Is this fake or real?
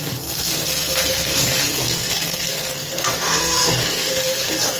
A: fake